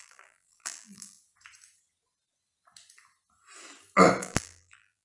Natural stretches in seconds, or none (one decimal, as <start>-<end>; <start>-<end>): 1.2-4.2